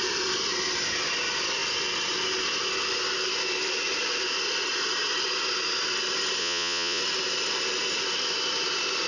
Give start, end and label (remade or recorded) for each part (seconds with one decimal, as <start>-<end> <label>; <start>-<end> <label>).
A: 0.0-6.4 recorded; 6.4-7.0 remade; 7.0-9.1 recorded